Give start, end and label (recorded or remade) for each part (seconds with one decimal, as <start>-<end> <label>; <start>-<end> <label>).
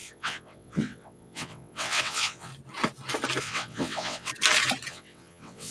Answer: 0.0-2.5 remade; 2.5-3.4 recorded; 3.4-4.3 remade; 4.3-4.9 recorded; 4.9-5.7 remade